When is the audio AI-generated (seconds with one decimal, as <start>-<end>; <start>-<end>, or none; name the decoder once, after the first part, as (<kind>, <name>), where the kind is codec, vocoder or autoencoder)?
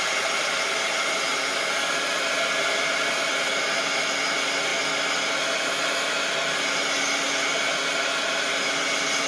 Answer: none